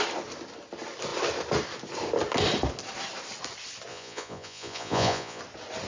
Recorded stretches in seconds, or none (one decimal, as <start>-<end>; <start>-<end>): 0.0-3.9; 5.4-5.9